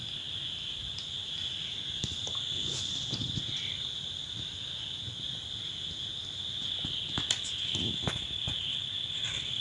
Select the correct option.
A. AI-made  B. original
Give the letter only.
B